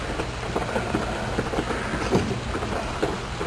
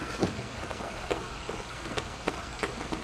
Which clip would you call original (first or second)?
first